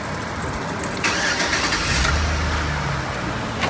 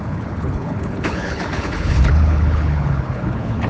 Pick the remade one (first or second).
second